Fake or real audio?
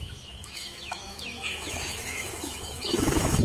fake